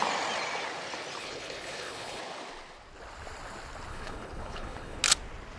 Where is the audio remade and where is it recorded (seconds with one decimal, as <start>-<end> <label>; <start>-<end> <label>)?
0.0-1.2 recorded; 1.2-2.2 remade; 2.2-3.9 recorded; 3.9-5.0 remade; 5.0-5.6 recorded